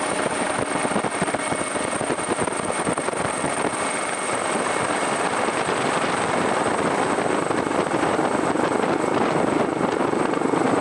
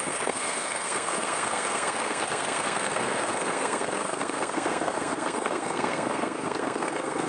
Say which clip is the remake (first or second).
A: second